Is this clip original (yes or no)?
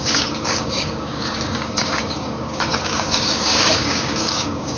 no